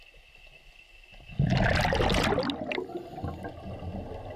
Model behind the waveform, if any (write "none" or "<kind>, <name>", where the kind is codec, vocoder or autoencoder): none